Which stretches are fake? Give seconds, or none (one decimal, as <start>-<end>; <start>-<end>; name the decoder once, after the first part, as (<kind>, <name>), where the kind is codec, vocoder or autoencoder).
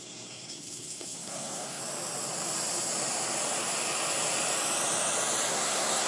0.0-1.8 (codec, SNAC); 5.5-6.1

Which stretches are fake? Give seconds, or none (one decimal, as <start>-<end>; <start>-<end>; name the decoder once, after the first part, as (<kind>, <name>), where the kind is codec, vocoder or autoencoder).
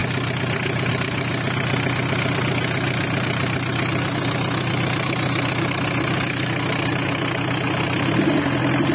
none